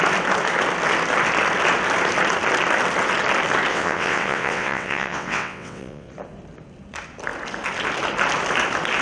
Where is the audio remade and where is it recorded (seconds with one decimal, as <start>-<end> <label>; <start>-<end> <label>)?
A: 0.0-3.7 recorded; 3.7-6.1 remade; 6.1-9.0 recorded